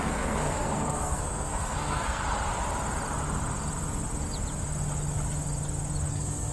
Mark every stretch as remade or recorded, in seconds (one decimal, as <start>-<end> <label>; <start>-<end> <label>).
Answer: 0.0-2.2 remade; 2.2-6.1 recorded; 6.1-6.5 remade

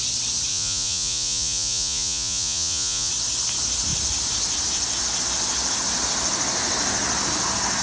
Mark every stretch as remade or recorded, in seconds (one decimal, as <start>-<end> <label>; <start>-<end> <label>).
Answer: 0.0-0.5 recorded; 0.5-3.1 remade; 3.1-7.8 recorded

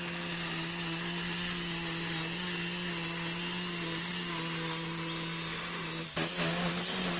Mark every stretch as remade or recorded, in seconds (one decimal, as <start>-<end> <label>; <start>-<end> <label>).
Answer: 0.0-7.2 recorded

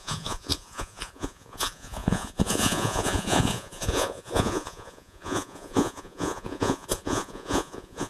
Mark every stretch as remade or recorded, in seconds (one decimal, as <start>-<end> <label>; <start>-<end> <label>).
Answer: 0.0-8.1 remade

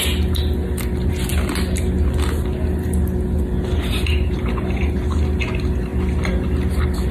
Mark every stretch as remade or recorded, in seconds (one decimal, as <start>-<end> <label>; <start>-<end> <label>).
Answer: 0.0-7.1 recorded

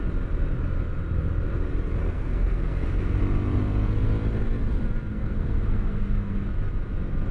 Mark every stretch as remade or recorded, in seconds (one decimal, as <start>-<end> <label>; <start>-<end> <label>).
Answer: 0.0-2.0 recorded; 2.0-3.2 remade; 3.2-5.1 recorded; 5.1-6.5 remade; 6.5-7.3 recorded